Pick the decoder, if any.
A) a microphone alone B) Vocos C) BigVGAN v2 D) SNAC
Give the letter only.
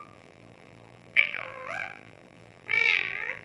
C